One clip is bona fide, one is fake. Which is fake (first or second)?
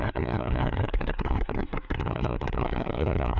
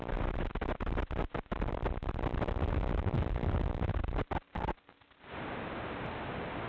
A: first